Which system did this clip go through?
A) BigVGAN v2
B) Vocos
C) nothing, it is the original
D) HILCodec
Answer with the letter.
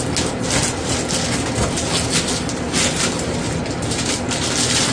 C